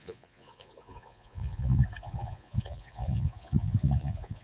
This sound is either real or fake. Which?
fake